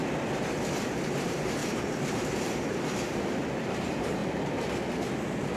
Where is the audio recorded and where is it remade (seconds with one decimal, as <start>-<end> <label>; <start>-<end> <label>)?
0.0-0.9 recorded; 0.9-4.2 remade; 4.2-5.6 recorded

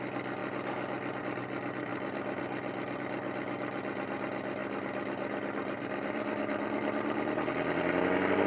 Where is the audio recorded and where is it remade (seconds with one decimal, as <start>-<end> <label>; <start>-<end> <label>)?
0.0-1.9 recorded; 1.9-3.0 remade; 3.0-4.6 recorded; 4.6-7.5 remade; 7.5-8.5 recorded

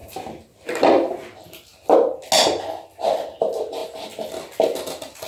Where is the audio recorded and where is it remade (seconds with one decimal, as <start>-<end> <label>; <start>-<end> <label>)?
0.0-5.3 recorded